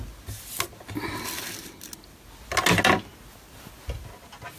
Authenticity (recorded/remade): recorded